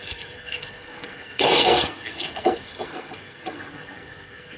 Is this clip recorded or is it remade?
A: remade